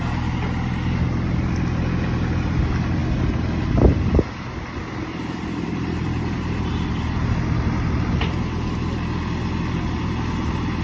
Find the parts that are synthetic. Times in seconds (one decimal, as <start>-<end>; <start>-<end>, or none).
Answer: 5.1-7.1